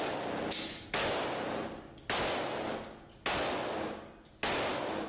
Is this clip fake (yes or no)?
no